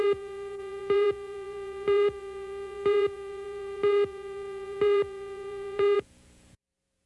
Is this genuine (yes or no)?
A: no